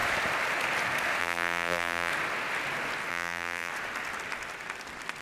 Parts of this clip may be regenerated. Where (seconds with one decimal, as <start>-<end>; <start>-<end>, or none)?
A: 1.2-2.1; 3.1-3.7